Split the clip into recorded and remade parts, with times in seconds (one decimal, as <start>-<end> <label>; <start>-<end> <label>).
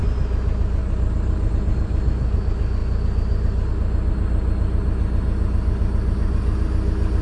0.0-0.8 recorded; 0.8-1.5 remade; 1.5-7.2 recorded